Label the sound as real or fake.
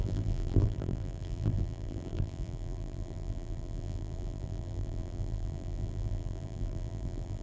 fake